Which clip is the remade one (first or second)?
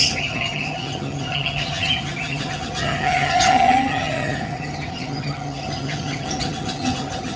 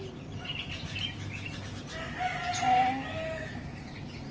first